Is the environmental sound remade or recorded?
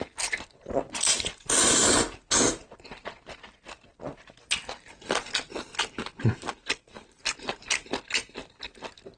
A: recorded